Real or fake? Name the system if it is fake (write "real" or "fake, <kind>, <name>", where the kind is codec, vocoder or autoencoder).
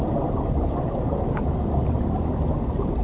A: fake, vocoder, BigVGAN v2